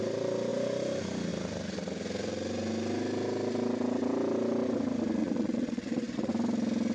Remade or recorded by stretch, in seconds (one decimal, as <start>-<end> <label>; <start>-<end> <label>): 0.0-5.2 recorded; 5.2-6.3 remade; 6.3-6.9 recorded